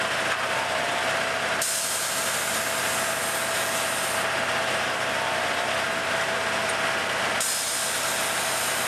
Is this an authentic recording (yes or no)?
yes